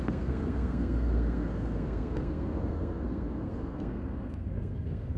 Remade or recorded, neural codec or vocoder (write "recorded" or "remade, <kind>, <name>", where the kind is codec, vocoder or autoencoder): remade, codec, SNAC